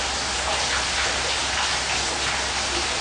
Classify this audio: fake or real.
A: real